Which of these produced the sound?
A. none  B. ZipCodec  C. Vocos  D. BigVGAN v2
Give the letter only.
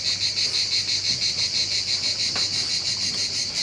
A